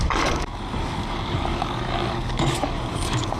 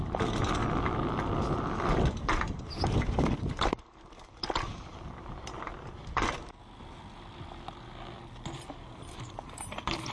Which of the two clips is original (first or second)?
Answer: second